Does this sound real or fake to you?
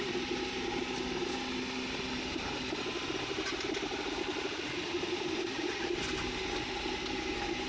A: real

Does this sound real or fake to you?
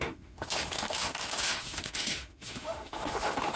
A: fake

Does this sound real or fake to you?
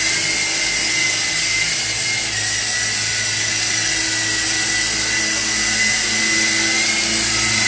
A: real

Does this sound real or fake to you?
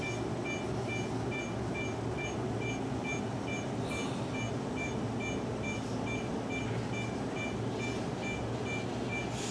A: real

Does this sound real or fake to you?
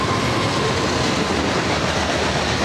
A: real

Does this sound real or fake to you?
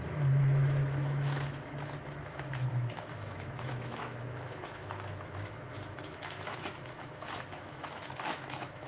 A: fake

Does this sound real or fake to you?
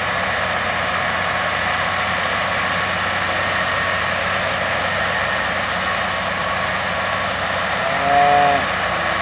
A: real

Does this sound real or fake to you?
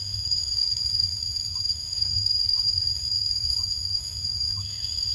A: fake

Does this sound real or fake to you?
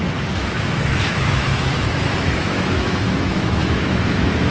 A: fake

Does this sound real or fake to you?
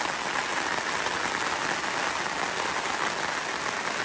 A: real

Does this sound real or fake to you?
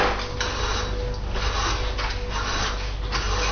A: real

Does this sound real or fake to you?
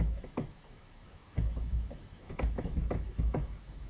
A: fake